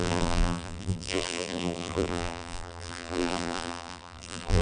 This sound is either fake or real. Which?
fake